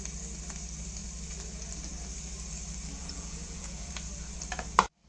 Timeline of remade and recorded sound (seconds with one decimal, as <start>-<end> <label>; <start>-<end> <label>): 0.0-3.0 recorded; 3.0-3.9 remade; 3.9-5.1 recorded